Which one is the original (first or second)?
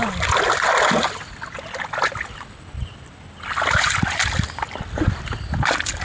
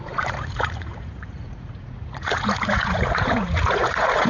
first